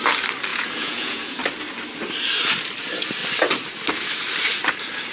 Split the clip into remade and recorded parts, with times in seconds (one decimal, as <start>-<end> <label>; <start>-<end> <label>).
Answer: 0.0-0.5 recorded; 0.5-1.4 remade; 1.4-5.1 recorded

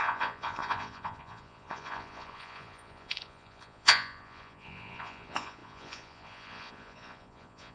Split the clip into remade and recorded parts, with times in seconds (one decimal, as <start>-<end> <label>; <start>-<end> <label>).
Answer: 0.0-7.7 remade